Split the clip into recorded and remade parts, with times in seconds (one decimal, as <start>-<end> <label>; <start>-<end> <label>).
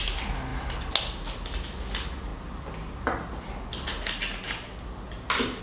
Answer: 0.0-5.6 recorded